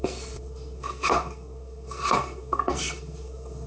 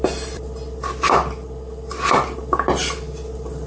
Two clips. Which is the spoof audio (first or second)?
first